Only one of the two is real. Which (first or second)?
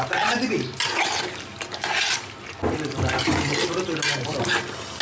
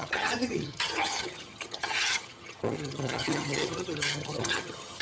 first